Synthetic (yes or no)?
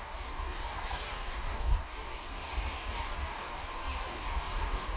yes